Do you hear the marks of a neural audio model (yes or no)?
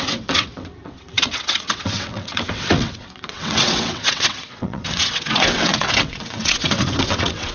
yes